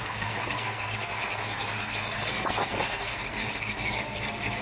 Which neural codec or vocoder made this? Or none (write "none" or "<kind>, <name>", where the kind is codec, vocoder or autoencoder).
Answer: codec, SNAC